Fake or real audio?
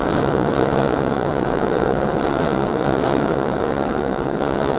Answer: fake